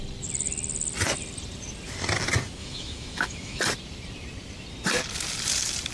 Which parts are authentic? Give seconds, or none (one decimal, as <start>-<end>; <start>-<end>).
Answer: 0.0-2.6; 3.6-5.9